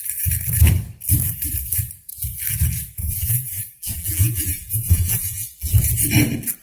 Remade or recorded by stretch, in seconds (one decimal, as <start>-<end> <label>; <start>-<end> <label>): 0.0-3.0 recorded; 3.0-5.7 remade; 5.7-6.6 recorded